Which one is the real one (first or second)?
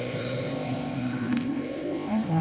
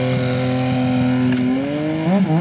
second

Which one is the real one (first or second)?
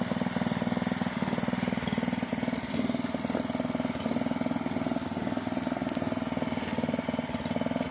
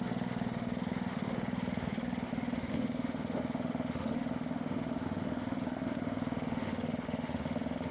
first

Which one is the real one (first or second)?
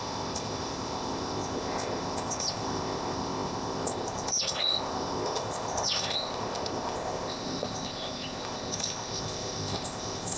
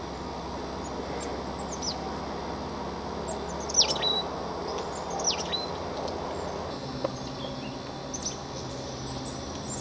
second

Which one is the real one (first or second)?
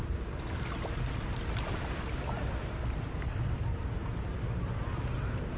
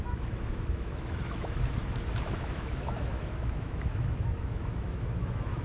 first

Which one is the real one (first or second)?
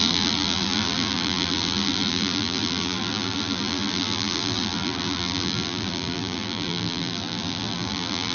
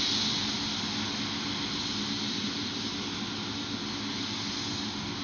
second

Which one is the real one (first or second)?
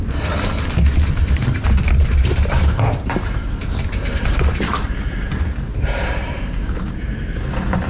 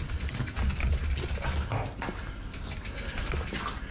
second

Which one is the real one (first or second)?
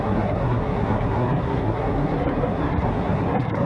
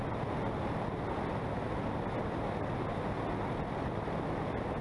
second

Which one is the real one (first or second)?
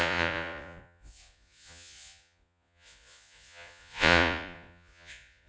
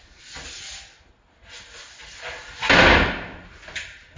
second